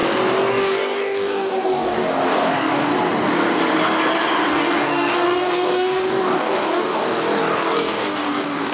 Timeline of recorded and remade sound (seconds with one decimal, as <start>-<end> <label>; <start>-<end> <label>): 0.0-0.5 recorded; 0.5-2.9 remade; 2.9-4.5 recorded; 4.5-8.7 remade